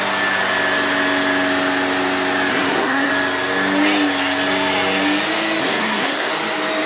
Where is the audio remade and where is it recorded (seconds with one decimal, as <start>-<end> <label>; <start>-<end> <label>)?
0.0-2.5 recorded; 2.5-3.1 remade; 3.1-5.6 recorded; 5.6-6.3 remade; 6.3-6.9 recorded